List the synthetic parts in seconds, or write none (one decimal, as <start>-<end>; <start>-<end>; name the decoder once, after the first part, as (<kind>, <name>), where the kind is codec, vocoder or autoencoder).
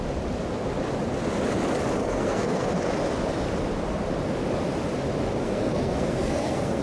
2.0-2.7 (codec, SNAC); 5.4-6.8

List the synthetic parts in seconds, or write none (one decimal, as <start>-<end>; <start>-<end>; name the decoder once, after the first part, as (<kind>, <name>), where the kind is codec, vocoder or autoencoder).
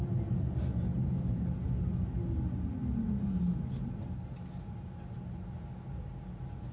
none